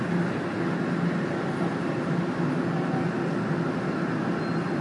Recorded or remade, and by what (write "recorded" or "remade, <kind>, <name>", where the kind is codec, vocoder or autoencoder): recorded